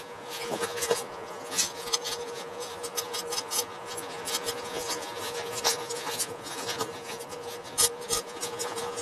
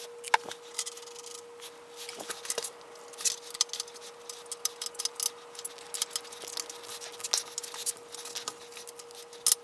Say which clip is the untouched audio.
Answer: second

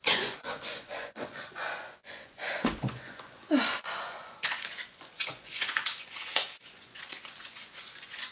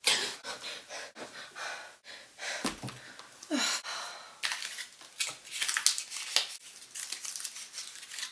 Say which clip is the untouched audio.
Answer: second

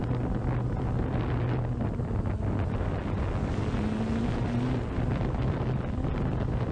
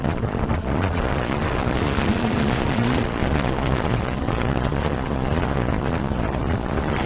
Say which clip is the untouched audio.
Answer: first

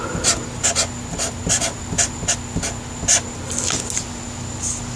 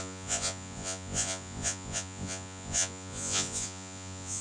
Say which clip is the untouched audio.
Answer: first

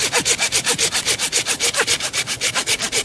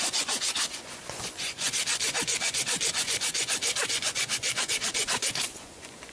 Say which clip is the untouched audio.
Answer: first